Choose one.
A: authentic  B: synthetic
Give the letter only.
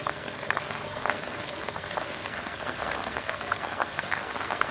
B